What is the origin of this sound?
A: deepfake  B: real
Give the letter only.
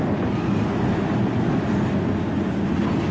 B